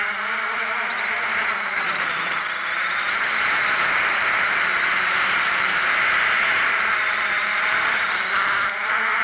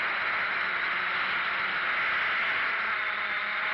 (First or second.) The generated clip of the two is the first